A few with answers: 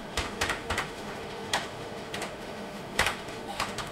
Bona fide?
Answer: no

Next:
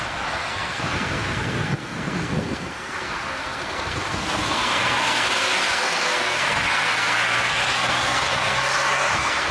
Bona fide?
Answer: no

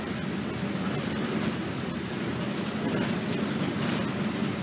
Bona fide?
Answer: yes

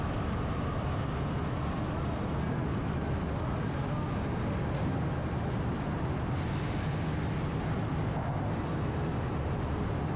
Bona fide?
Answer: yes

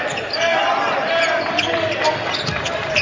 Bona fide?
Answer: yes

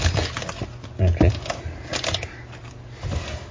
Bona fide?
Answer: yes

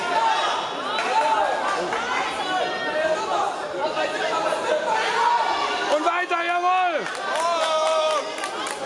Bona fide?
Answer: yes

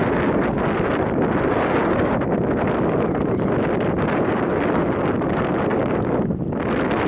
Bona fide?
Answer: yes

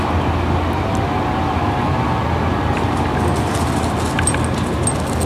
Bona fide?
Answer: yes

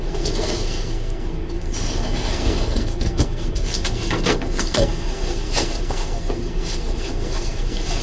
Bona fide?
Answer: no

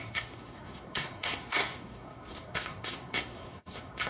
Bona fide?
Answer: no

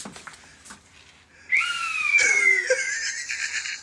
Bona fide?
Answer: yes